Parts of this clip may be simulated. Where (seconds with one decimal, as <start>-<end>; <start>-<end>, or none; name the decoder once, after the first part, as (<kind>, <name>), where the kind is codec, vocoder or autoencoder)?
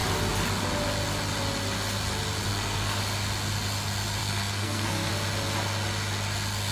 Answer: 2.5-3.0 (codec, SNAC); 4.2-5.1